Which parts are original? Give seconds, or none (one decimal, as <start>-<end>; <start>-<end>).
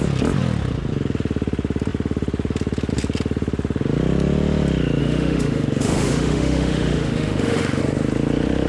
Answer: 0.0-5.0; 7.8-8.7